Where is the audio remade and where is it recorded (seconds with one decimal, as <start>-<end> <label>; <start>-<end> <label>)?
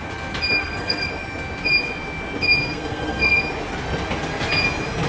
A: 0.0-0.6 recorded; 0.6-1.1 remade; 1.1-2.6 recorded; 2.6-3.4 remade; 3.4-5.1 recorded